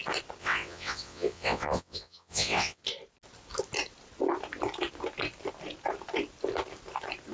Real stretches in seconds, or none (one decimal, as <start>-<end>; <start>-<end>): 0.0-0.4; 2.8-7.3